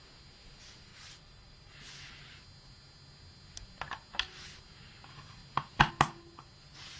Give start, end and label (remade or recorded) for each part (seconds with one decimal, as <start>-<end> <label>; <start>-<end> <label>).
0.0-0.9 recorded; 0.9-1.7 remade; 1.7-7.0 recorded